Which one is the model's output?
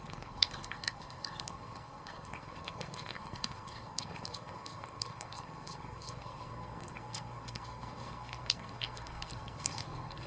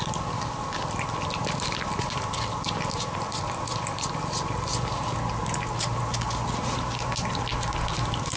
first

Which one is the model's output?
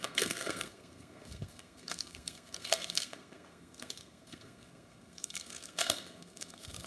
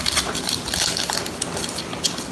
first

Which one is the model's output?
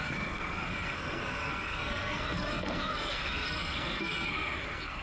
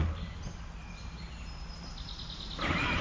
first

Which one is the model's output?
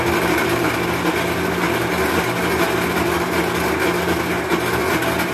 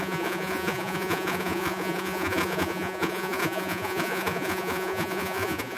second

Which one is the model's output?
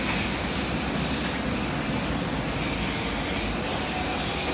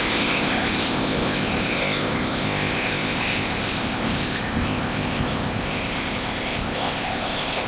second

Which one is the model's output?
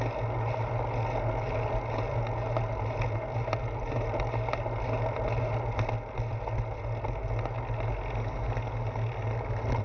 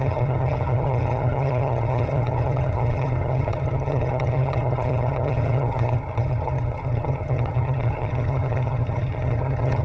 second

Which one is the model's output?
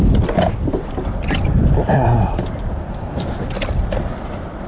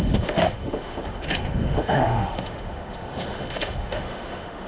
second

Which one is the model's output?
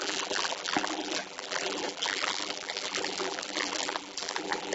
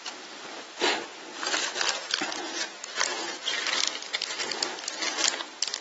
first